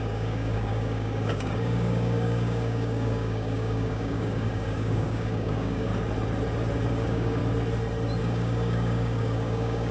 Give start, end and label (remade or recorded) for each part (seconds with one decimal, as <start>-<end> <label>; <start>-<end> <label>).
0.0-5.9 remade; 5.9-6.9 recorded; 6.9-7.4 remade; 7.4-8.2 recorded; 8.2-9.9 remade